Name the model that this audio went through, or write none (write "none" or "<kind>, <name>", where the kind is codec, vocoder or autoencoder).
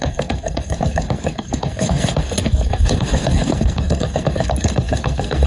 codec, SNAC